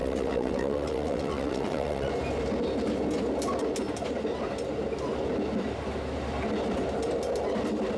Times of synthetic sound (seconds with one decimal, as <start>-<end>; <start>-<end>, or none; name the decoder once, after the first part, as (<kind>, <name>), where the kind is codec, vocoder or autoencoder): 0.0-2.1 (vocoder, WaveNeXt)